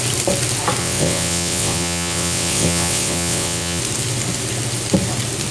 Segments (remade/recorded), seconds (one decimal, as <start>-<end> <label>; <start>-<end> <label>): 0.0-0.8 recorded; 0.8-3.8 remade; 3.8-5.5 recorded